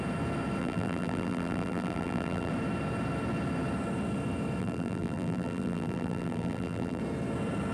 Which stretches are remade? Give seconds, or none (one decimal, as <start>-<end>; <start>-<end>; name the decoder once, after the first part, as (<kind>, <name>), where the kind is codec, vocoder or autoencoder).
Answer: 0.6-2.5 (vocoder, BigVGAN v2); 4.6-7.0